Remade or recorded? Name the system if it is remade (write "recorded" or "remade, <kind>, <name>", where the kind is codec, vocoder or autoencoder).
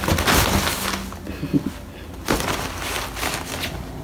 recorded